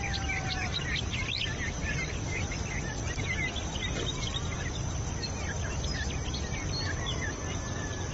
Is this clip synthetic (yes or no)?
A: no